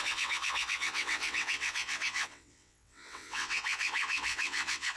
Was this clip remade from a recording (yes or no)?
yes